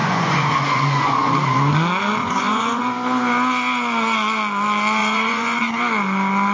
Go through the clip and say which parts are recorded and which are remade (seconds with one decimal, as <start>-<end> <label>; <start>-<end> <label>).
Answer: 0.0-1.3 remade; 1.3-2.2 recorded; 2.2-2.8 remade; 2.8-5.0 recorded; 5.0-5.7 remade; 5.7-6.5 recorded